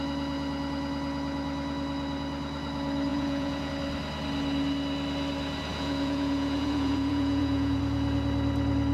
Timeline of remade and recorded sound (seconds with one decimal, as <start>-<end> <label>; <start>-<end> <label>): 0.0-3.1 recorded; 3.1-3.7 remade; 3.7-5.7 recorded; 5.7-7.8 remade; 7.8-8.9 recorded